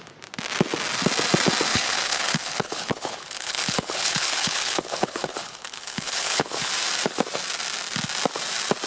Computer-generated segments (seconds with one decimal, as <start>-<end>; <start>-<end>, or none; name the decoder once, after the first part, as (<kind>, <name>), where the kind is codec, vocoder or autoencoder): 1.7-6.7 (codec, HILCodec)